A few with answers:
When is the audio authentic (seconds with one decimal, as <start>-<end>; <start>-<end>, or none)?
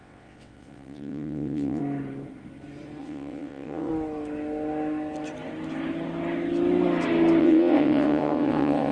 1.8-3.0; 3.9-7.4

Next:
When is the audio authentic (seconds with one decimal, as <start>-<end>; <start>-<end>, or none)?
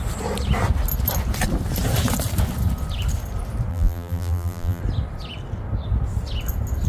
0.0-3.7; 4.8-6.9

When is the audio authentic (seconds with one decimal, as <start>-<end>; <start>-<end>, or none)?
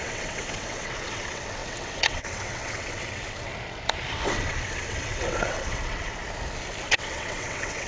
3.5-4.1; 6.2-6.9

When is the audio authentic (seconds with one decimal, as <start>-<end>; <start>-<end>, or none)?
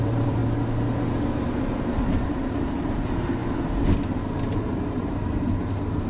0.4-1.5; 3.4-4.4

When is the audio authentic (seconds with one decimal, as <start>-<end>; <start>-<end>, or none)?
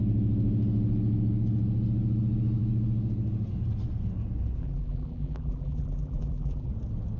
0.0-4.6; 6.7-7.2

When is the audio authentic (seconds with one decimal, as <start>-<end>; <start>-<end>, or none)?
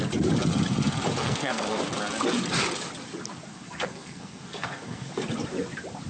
0.0-1.2; 1.8-3.5; 5.1-6.1